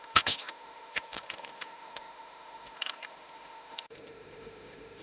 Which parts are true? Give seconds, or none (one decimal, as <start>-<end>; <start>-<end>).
none